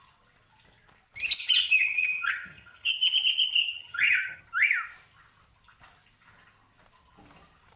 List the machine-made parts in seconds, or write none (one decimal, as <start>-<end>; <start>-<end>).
1.4-2.9; 3.6-4.4